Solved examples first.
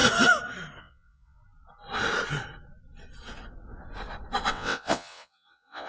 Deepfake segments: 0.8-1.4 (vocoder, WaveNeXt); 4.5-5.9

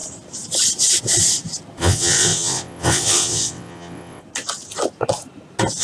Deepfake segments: 1.8-4.2 (vocoder, WaveNeXt)